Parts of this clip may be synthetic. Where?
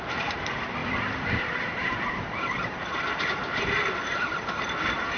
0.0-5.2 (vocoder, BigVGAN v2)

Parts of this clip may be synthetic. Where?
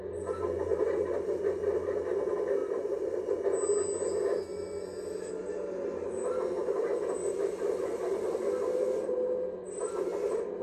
0.7-2.1 (vocoder, BigVGAN v2); 2.6-3.2; 6.6-8.4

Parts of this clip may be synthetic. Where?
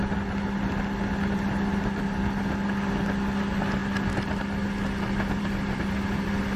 none